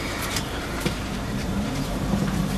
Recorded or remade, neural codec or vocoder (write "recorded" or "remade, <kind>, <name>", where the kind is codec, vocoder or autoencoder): remade, vocoder, BigVGAN v2